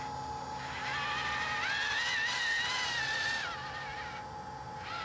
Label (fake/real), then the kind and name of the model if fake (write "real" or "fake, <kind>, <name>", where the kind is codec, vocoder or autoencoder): real